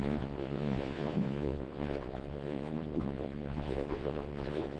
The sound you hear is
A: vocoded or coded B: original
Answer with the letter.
A